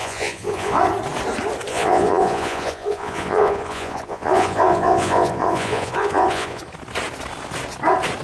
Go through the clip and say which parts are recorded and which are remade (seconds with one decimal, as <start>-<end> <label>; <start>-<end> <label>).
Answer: 0.0-0.8 remade; 0.8-1.7 recorded; 1.7-6.6 remade; 6.6-8.2 recorded